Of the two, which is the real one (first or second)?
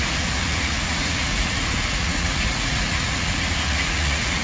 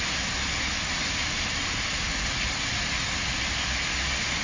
second